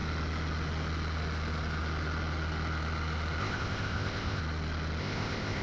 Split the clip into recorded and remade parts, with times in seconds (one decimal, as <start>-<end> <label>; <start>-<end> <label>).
0.0-3.4 recorded; 3.4-4.4 remade; 4.4-5.0 recorded; 5.0-5.6 remade